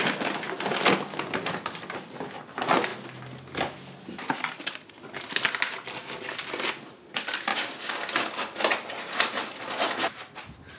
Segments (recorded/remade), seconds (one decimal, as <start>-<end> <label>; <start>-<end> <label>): 0.0-7.5 recorded; 7.5-8.1 remade; 8.1-10.8 recorded